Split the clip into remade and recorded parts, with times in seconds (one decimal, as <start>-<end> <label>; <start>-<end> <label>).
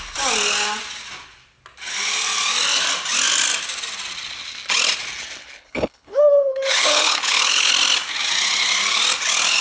0.0-5.4 recorded; 5.4-7.7 remade; 7.7-9.6 recorded